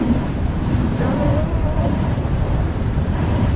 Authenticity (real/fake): fake